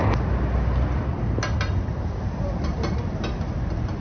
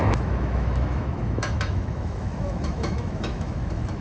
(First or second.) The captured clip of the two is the first